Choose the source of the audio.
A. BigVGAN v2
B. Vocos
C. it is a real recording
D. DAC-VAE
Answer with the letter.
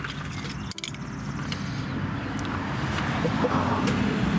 C